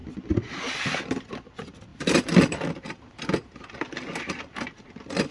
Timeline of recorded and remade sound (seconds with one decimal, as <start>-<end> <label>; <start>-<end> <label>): 0.0-5.3 recorded

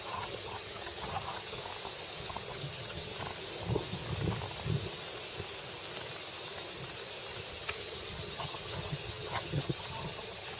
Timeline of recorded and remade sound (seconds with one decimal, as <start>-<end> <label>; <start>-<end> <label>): 0.0-1.6 remade; 1.6-2.3 recorded; 2.3-3.1 remade; 3.1-7.5 recorded; 7.5-10.6 remade

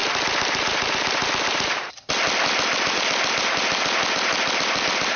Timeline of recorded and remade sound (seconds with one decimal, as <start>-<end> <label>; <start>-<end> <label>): 0.0-1.9 remade; 1.9-5.2 recorded

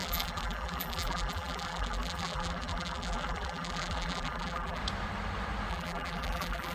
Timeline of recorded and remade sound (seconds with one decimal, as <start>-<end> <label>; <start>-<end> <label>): 0.0-4.8 remade; 4.8-5.7 recorded; 5.7-6.7 remade

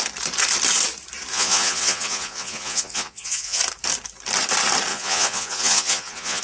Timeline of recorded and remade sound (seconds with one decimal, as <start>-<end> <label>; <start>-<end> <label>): 0.0-1.3 recorded; 1.3-3.6 remade; 3.6-4.9 recorded; 4.9-6.4 remade

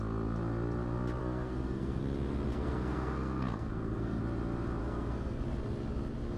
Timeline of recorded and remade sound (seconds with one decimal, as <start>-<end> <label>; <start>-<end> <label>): 0.0-1.2 recorded; 1.2-2.0 remade; 2.0-2.5 recorded; 2.5-4.2 remade; 4.2-4.8 recorded; 4.8-5.4 remade; 5.4-6.4 recorded

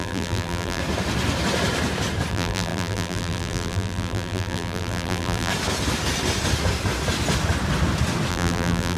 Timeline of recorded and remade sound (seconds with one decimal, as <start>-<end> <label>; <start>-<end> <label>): 0.0-0.8 remade; 0.8-2.3 recorded; 2.3-5.5 remade; 5.5-8.3 recorded; 8.3-9.0 remade